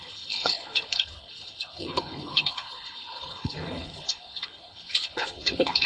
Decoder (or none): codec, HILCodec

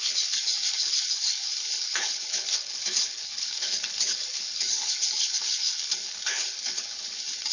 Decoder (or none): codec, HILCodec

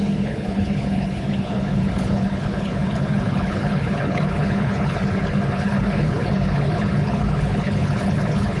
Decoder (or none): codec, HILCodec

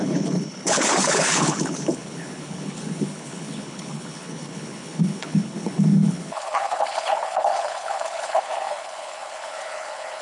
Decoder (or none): codec, HILCodec